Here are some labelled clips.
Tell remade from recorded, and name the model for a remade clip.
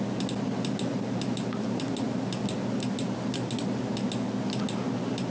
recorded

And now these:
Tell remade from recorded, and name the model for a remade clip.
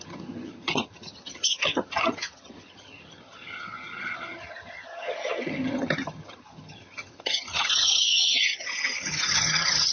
remade, vocoder, HiFi-GAN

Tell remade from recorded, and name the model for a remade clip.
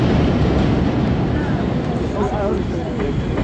recorded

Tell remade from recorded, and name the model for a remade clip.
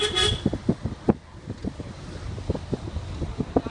recorded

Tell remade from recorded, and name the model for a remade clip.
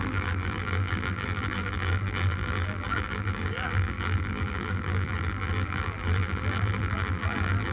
remade, vocoder, BigVGAN v2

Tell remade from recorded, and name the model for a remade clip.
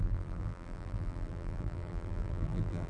remade, vocoder, BigVGAN v2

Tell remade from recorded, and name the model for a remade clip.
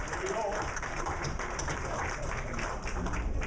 remade, vocoder, BigVGAN v2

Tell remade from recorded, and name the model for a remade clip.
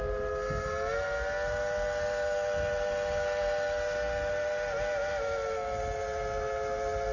recorded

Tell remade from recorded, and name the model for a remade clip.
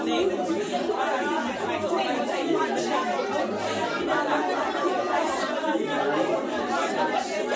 recorded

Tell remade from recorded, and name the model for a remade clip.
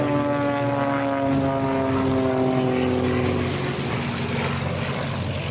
recorded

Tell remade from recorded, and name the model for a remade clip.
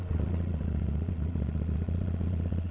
remade, vocoder, Vocos